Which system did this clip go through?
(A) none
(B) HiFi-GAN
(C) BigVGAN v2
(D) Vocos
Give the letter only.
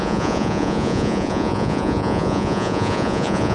D